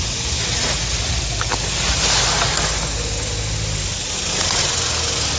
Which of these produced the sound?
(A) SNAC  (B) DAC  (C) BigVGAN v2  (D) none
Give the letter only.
D